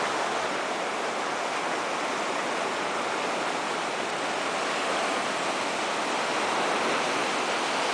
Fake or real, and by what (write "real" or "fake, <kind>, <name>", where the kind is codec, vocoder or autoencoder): real